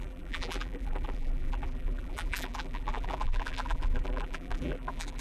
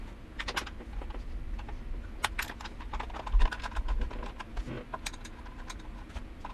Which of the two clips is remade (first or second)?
first